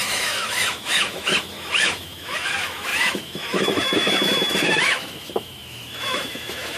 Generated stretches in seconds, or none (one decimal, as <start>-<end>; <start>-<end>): 0.0-6.8